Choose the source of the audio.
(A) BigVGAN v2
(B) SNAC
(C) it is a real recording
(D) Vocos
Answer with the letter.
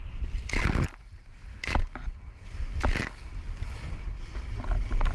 C